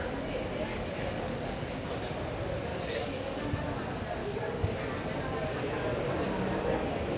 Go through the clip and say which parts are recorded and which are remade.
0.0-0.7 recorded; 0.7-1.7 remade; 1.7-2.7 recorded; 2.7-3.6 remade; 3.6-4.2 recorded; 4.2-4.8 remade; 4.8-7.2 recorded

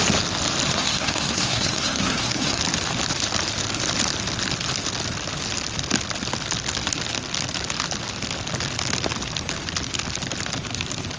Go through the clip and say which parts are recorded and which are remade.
0.0-0.7 recorded; 0.7-2.6 remade; 2.6-11.2 recorded

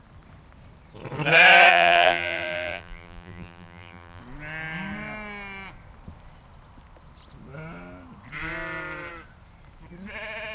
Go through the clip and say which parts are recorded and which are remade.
0.0-1.7 recorded; 1.7-4.2 remade; 4.2-10.5 recorded